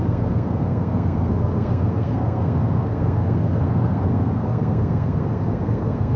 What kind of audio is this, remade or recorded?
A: remade